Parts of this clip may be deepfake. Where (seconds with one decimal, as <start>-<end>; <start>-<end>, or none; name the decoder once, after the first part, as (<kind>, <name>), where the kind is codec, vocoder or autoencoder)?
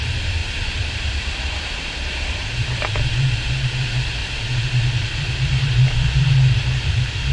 none